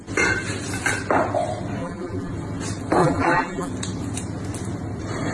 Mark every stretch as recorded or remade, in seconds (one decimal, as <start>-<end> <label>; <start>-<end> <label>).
0.0-1.8 recorded; 1.8-2.3 remade; 2.3-3.0 recorded; 3.0-3.7 remade; 3.7-5.3 recorded